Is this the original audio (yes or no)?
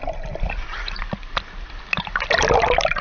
yes